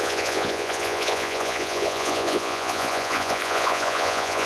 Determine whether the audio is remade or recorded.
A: remade